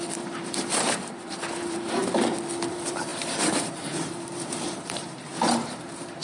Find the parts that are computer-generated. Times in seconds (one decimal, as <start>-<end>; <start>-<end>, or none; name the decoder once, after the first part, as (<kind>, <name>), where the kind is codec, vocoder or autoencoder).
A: 0.0-2.0 (vocoder, BigVGAN v2); 2.7-6.2